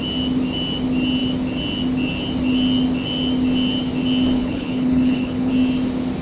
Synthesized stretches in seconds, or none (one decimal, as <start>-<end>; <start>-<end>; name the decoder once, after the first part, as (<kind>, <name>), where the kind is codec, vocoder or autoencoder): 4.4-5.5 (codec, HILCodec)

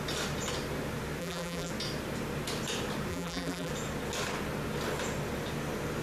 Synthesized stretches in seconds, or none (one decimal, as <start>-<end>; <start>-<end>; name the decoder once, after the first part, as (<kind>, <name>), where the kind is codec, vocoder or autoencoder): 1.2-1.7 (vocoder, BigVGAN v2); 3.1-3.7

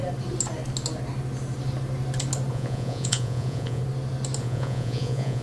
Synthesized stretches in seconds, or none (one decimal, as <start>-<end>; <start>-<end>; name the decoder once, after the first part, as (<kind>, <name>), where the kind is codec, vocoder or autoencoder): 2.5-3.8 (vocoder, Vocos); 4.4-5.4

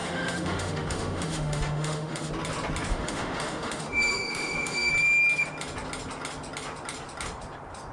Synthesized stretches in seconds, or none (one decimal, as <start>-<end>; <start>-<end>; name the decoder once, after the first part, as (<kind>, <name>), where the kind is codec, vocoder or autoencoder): 0.0-2.3 (autoencoder, DAC-VAE); 2.9-4.9

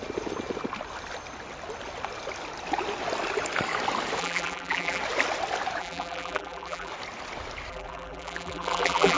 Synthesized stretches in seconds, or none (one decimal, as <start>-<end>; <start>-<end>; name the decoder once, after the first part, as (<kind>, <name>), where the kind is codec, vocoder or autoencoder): 4.2-5.0 (vocoder, BigVGAN v2); 5.8-6.9; 7.7-9.2